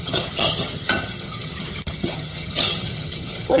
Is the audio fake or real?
fake